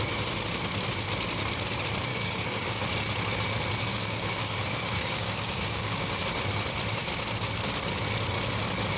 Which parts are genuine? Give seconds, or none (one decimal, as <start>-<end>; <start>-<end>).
0.0-2.1; 2.8-3.9; 6.2-9.0